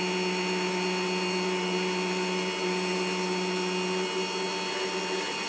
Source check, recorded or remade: recorded